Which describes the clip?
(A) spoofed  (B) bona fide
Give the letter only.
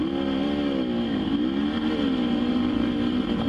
B